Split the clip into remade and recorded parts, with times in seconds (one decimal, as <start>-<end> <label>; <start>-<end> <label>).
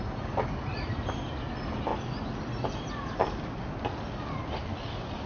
0.0-5.3 recorded